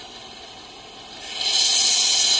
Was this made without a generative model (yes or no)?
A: yes